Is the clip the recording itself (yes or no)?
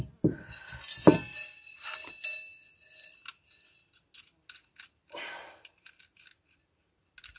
yes